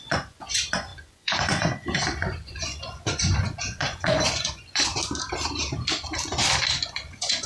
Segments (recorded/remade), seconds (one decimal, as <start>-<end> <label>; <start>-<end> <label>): 0.0-4.9 remade; 4.9-6.9 recorded; 6.9-7.5 remade